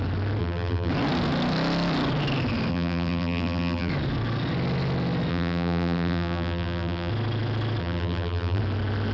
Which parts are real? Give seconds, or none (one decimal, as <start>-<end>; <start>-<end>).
0.0-0.4; 0.9-2.7; 3.9-5.3; 7.1-7.8; 8.6-9.1